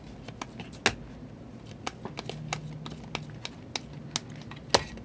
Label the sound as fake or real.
real